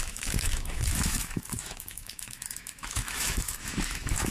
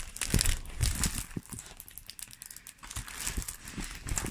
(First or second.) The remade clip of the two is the first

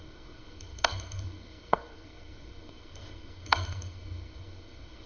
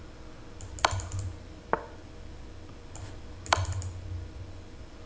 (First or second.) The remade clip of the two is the first